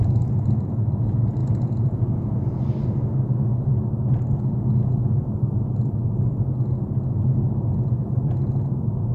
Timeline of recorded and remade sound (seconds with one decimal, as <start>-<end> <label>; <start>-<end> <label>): 0.0-1.4 recorded; 1.4-2.6 remade; 2.6-9.1 recorded